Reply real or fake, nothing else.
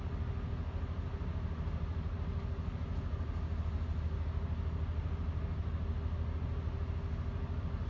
real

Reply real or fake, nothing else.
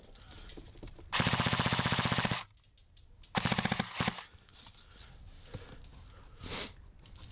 real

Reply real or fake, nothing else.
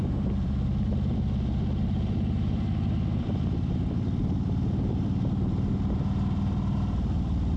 fake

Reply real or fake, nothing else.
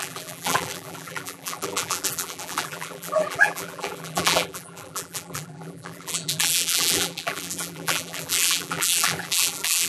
fake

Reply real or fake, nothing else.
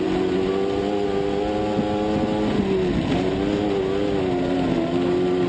real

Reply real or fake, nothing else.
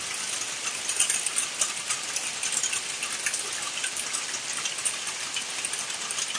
real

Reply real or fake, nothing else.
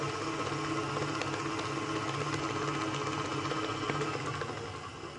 real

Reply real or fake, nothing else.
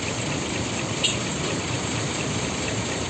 fake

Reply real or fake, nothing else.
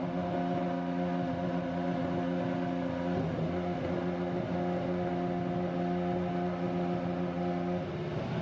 real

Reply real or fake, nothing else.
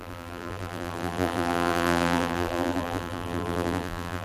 fake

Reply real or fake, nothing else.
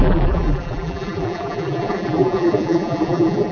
fake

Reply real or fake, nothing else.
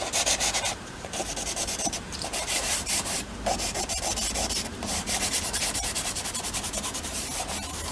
fake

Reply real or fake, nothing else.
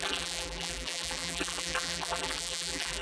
fake